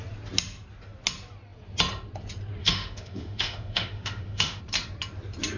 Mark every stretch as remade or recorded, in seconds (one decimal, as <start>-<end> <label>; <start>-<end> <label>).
0.0-2.6 recorded; 2.6-4.6 remade; 4.6-5.6 recorded